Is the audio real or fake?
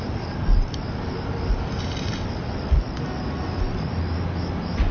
real